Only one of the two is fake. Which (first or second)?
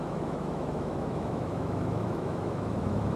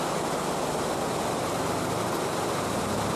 first